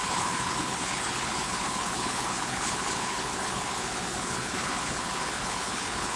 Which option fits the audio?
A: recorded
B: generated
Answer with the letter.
B